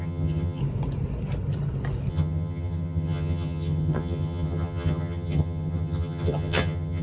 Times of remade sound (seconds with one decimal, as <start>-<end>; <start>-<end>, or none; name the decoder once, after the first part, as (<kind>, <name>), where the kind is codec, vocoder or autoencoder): 0.0-0.6 (vocoder, HiFi-GAN); 2.1-7.0